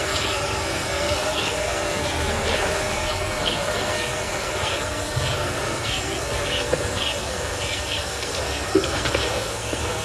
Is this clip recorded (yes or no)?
no